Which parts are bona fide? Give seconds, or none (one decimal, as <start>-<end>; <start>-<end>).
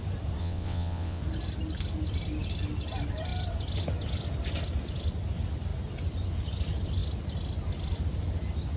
0.0-0.4; 1.2-8.8